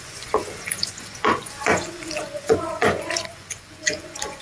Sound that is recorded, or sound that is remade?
remade